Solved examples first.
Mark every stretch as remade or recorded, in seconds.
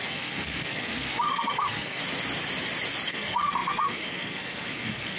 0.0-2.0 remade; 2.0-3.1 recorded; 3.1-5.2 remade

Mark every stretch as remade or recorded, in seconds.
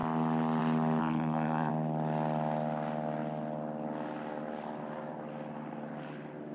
0.0-1.0 recorded; 1.0-1.7 remade; 1.7-6.5 recorded